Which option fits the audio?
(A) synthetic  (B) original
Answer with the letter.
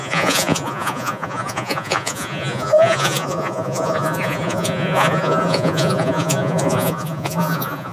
A